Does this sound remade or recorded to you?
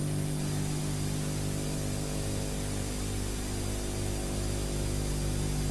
recorded